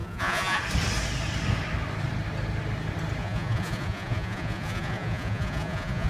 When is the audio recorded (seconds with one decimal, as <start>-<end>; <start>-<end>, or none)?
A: 0.6-3.2